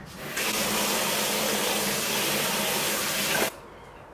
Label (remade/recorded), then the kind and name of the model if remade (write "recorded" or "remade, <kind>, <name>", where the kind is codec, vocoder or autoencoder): recorded